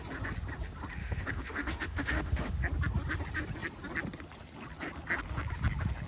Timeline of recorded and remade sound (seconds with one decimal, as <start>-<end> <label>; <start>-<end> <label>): 0.0-1.0 recorded; 1.0-2.6 remade; 2.6-6.1 recorded